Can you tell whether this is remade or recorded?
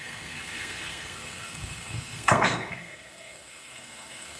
remade